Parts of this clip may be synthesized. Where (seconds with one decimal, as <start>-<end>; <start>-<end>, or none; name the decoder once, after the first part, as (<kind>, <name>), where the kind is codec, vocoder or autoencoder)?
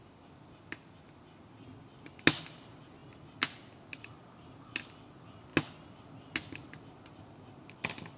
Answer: none